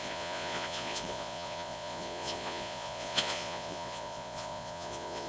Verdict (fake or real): fake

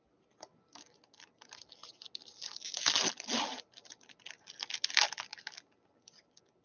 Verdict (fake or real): real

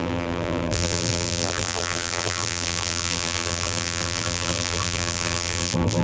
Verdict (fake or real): fake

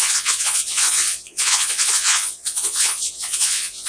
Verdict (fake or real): fake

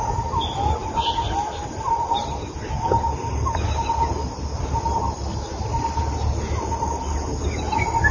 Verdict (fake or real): real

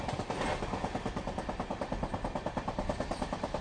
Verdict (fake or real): real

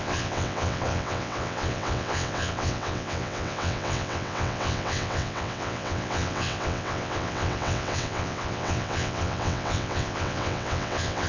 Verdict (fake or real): fake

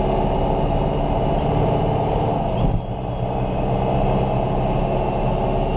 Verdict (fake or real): real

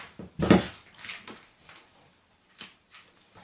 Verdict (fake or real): real